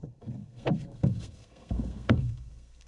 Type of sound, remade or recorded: remade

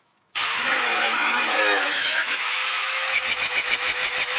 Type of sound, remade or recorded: remade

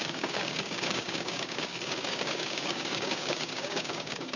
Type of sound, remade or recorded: remade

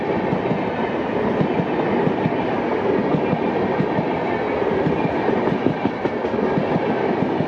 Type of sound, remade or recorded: recorded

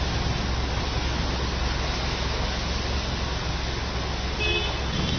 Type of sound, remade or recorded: recorded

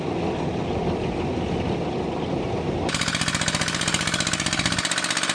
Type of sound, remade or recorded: recorded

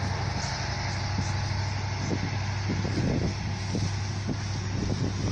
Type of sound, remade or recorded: recorded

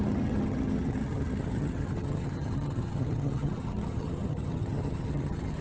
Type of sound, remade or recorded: remade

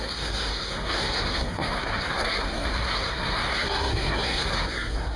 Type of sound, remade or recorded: remade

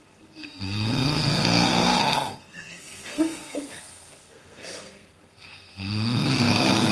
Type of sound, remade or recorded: remade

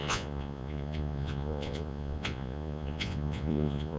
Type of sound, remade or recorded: remade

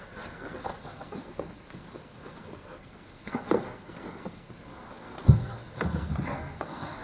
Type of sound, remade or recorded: remade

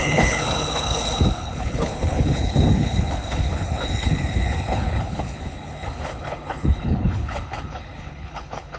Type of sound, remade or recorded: remade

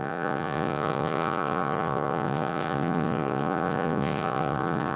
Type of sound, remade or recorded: remade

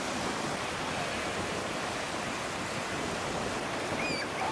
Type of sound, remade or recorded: recorded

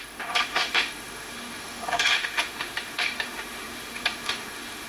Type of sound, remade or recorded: remade